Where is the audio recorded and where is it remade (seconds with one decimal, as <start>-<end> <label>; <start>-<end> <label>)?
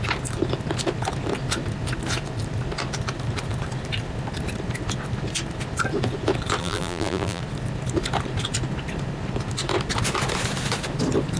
0.0-6.6 recorded; 6.6-7.4 remade; 7.4-11.4 recorded